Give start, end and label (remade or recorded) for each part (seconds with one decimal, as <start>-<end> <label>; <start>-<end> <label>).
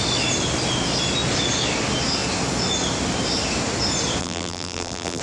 0.0-4.2 recorded; 4.2-5.2 remade